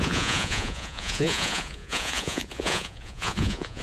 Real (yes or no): no